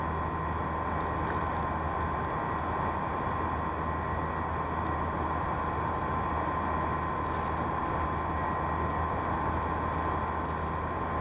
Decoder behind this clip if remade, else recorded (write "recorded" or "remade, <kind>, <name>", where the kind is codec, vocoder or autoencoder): recorded